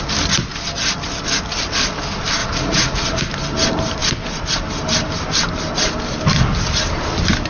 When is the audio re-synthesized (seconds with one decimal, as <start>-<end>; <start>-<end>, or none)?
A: 2.4-3.2